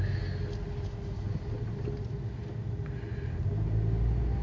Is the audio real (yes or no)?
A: yes